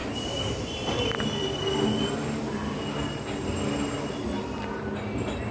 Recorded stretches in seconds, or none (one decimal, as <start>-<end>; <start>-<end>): 0.0-5.5